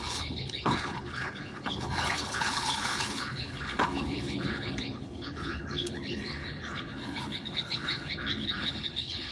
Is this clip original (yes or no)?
no